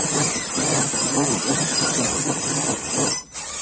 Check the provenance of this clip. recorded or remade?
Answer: recorded